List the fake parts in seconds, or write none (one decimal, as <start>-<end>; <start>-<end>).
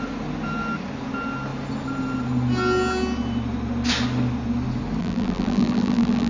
5.0-6.3